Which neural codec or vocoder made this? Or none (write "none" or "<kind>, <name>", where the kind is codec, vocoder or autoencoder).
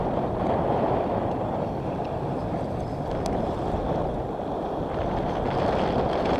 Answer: vocoder, BigVGAN v2